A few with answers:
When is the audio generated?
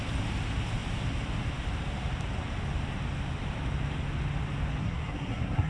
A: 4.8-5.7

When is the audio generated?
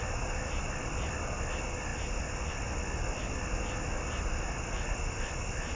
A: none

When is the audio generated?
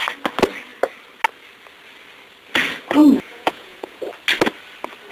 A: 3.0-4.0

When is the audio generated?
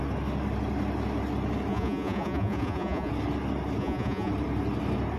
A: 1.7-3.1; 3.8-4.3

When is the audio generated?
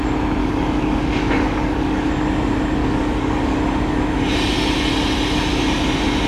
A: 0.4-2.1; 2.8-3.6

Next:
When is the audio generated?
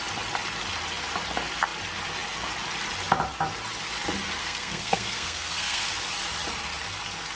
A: 4.4-5.8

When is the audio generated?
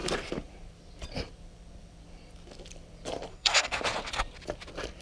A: 3.3-3.8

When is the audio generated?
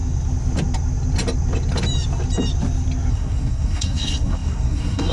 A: 3.1-5.1